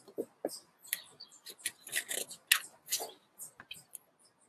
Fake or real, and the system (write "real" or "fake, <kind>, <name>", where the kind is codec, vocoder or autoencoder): real